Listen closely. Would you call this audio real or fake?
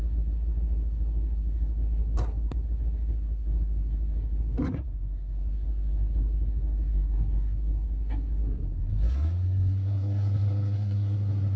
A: fake